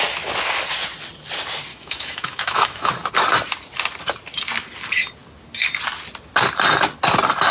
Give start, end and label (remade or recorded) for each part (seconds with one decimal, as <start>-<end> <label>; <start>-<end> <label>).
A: 0.0-1.7 recorded; 1.7-2.9 remade; 2.9-7.5 recorded